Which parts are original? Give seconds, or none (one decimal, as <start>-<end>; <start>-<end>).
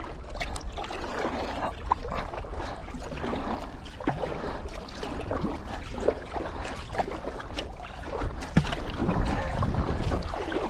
0.0-10.7